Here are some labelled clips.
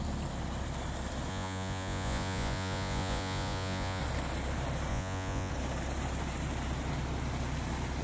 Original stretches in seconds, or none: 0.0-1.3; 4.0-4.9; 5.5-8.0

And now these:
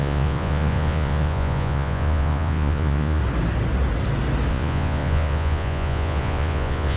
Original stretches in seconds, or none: 3.2-4.5

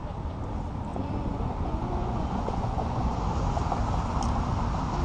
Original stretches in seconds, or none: 0.0-0.9; 3.2-5.0

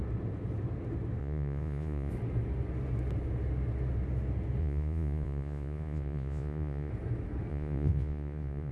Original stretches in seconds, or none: 0.0-1.2; 2.1-4.6; 6.9-7.5

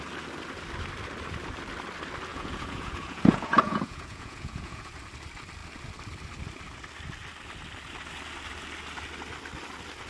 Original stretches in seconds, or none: 0.0-2.3; 4.9-10.1

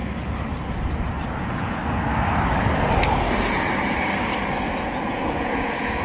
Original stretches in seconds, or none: 0.0-1.4; 1.8-4.8

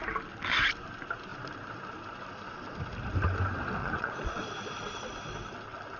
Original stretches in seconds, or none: 0.0-3.8; 4.4-6.0

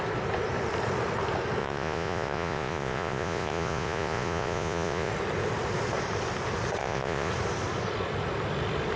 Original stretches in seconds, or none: 0.0-1.6; 5.1-6.8; 7.3-9.0